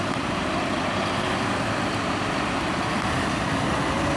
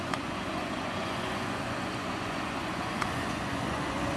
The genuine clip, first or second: first